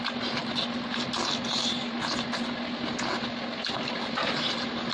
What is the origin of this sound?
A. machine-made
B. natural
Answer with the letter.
B